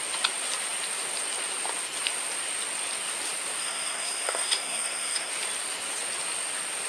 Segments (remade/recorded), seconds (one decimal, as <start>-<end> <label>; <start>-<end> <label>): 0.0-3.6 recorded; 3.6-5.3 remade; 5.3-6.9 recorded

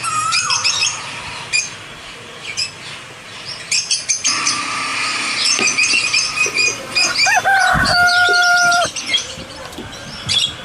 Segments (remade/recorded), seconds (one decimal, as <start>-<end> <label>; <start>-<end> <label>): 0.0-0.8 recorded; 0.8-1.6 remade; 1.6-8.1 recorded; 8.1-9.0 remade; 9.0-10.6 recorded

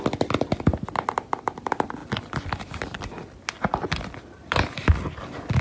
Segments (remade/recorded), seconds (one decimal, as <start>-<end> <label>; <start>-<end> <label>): 0.0-5.6 recorded

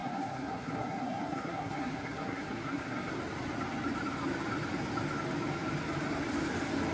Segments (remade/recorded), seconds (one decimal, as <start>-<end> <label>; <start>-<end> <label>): 0.0-3.1 remade; 3.1-6.9 recorded

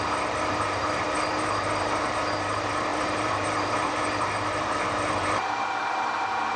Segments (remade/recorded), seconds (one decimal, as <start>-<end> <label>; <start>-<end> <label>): 0.0-6.6 remade

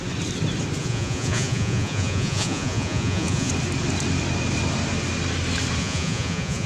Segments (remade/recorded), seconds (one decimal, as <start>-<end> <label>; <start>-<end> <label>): 0.0-0.8 recorded; 0.8-3.5 remade; 3.5-5.8 recorded; 5.8-6.7 remade